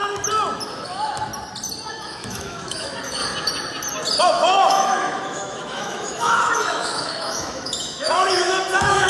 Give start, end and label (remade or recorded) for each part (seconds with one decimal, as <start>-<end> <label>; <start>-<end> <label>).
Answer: 0.0-0.7 recorded; 0.7-1.3 remade; 1.3-1.9 recorded; 1.9-3.2 remade; 3.2-4.2 recorded; 4.2-9.1 remade